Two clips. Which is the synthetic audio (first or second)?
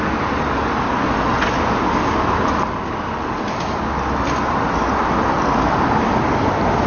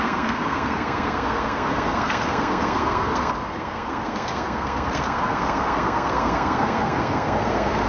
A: second